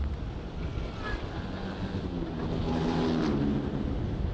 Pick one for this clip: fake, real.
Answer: real